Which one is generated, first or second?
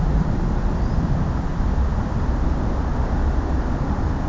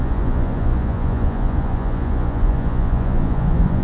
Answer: second